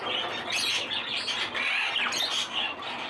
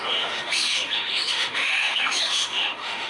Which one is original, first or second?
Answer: first